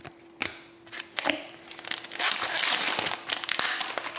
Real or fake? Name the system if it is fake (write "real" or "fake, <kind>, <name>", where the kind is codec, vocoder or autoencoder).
real